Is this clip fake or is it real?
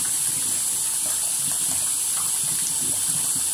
real